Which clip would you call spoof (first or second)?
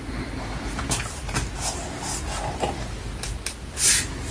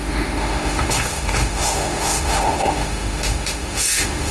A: second